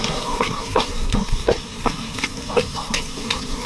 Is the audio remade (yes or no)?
yes